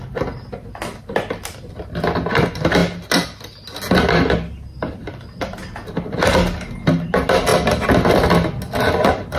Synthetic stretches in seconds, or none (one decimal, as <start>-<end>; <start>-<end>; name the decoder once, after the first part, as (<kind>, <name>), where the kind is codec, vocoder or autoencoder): none